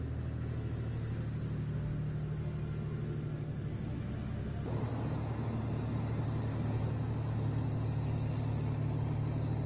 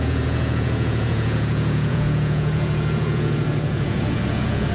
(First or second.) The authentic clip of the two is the first